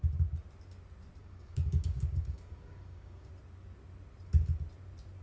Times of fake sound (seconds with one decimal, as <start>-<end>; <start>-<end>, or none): 1.2-3.3